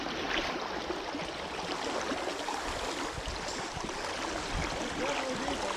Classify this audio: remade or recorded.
recorded